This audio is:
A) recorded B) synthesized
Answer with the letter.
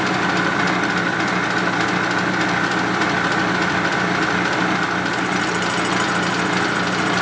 A